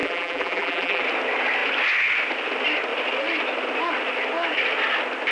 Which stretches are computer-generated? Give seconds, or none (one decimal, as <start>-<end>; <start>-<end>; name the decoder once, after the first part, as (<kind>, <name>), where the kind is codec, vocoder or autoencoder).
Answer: 0.0-1.0 (vocoder, BigVGAN v2)